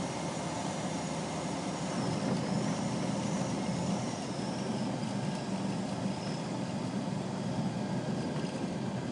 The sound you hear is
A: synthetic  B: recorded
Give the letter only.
B